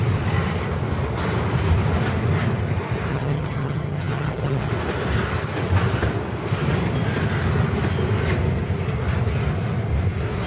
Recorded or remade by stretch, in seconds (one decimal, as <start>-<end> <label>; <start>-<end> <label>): 0.0-3.1 recorded; 3.1-4.7 remade; 4.7-10.5 recorded

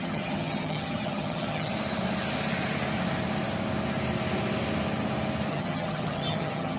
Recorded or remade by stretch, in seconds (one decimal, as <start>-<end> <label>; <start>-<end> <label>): 0.0-1.7 remade; 1.7-5.5 recorded; 5.5-6.8 remade

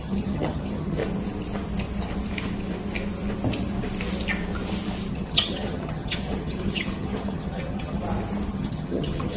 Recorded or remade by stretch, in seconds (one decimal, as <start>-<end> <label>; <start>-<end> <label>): 0.0-1.0 remade; 1.0-5.1 recorded; 5.1-8.0 remade; 8.0-8.5 recorded; 8.5-9.4 remade

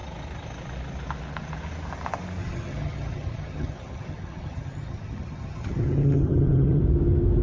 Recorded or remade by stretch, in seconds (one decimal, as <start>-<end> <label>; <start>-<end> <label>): 0.0-2.4 recorded; 2.4-6.8 remade; 6.8-7.4 recorded

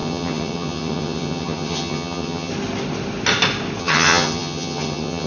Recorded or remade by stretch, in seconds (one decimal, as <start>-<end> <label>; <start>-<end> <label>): 0.0-2.5 remade; 2.5-3.8 recorded; 3.8-5.3 remade

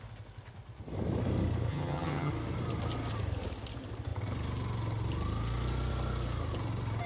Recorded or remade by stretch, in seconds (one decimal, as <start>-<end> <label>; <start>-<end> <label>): 0.0-1.7 recorded; 1.7-2.3 remade; 2.3-7.1 recorded

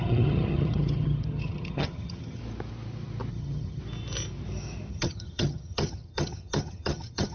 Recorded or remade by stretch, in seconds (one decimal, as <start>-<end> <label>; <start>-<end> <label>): 0.0-2.4 remade; 2.4-3.3 recorded; 3.3-3.8 remade; 3.8-4.9 recorded; 4.9-7.3 remade

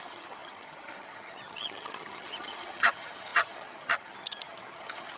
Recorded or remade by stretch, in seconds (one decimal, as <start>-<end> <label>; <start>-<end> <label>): 0.0-5.2 remade